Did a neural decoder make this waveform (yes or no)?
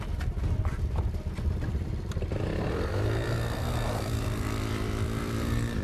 yes